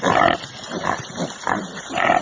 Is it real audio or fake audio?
real